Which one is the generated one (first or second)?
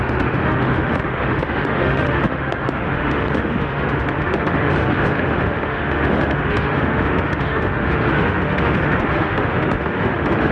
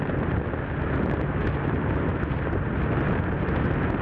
first